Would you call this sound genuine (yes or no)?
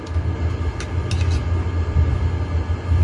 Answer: yes